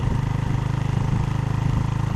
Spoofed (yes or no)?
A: no